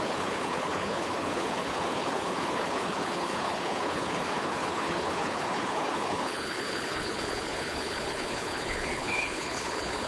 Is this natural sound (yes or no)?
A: no